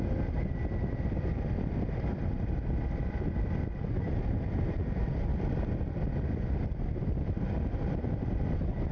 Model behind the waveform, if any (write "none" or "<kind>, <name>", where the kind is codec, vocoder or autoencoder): vocoder, BigVGAN v2